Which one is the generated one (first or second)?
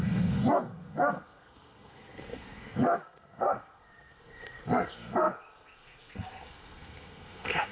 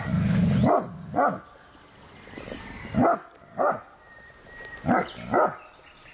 first